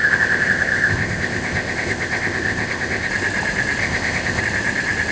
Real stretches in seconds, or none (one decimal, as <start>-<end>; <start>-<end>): 3.1-3.8; 4.4-5.1